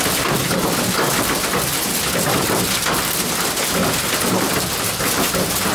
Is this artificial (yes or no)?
no